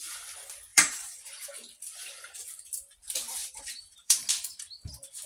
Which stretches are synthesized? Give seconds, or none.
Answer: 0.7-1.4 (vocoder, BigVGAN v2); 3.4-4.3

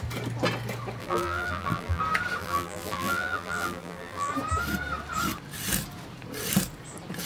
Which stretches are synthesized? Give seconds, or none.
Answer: 1.0-2.0 (vocoder, BigVGAN v2); 2.4-4.3